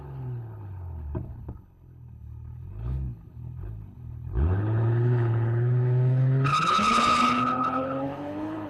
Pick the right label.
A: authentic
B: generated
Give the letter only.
B